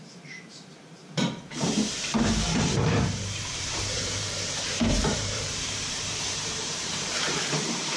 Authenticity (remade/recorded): remade